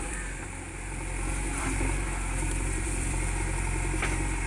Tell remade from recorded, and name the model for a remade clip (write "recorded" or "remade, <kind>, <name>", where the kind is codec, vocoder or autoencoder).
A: remade, vocoder, BigVGAN v2